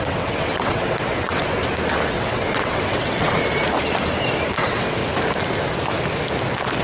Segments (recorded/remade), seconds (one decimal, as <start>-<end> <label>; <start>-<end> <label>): 0.0-1.6 remade; 1.6-2.1 recorded; 2.1-3.4 remade; 3.4-4.5 recorded; 4.5-5.0 remade; 5.0-6.8 recorded